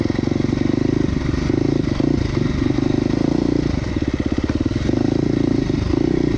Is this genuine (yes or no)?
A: yes